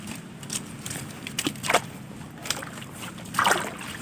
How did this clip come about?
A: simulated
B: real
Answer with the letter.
B